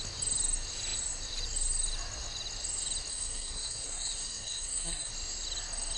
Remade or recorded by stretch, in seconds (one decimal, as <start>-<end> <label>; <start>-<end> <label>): 0.0-3.1 recorded; 3.1-5.1 remade; 5.1-6.0 recorded